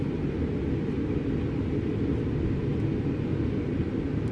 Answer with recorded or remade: recorded